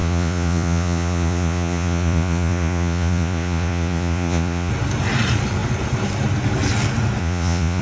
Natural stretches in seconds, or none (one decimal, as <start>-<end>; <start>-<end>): 4.7-7.2